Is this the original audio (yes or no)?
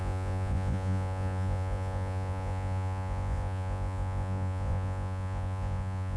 no